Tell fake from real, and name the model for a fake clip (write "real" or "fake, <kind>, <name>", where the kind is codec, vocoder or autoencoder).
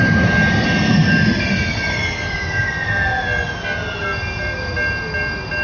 real